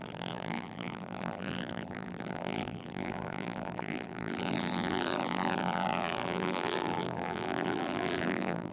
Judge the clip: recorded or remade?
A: remade